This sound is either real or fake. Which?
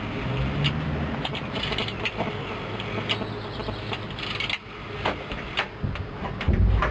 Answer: real